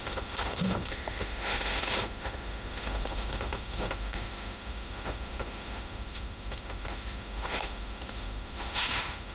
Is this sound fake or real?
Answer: fake